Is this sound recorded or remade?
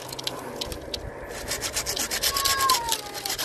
recorded